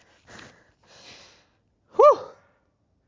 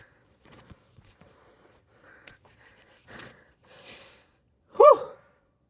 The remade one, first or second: second